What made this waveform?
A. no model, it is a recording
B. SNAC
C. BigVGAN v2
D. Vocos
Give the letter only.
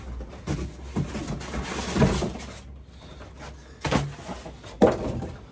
A